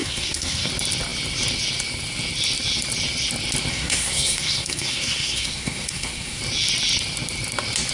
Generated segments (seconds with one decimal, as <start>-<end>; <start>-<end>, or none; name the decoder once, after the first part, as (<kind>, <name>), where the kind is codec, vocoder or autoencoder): 0.0-0.7 (codec, SNAC); 3.7-6.4